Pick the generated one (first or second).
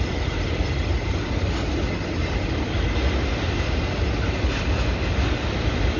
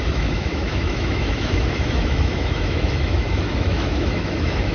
second